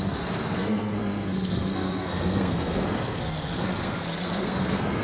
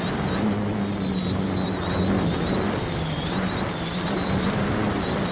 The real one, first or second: second